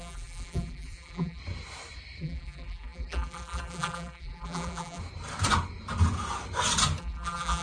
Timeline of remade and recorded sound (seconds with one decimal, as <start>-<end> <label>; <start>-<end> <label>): 0.0-1.4 remade; 1.4-2.2 recorded; 2.2-5.0 remade; 5.0-7.0 recorded; 7.0-7.6 remade